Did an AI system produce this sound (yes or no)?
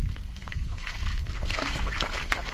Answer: yes